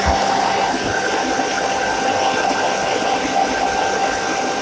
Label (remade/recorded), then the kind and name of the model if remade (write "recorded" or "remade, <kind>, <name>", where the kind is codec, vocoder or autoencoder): recorded